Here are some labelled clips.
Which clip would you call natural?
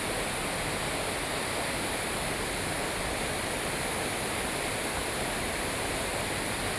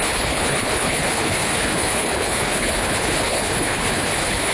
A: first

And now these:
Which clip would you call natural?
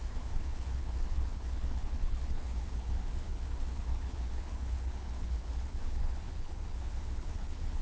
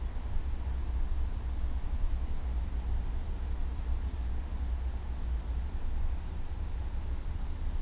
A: second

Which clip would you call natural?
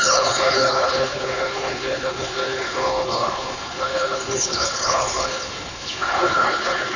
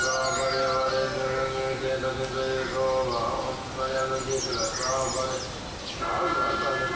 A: second